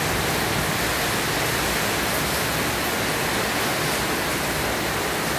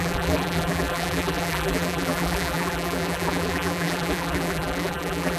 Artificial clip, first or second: second